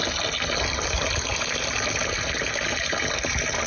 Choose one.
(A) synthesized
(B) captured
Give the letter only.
B